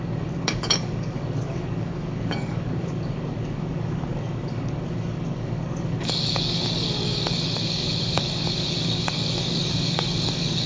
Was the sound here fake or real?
fake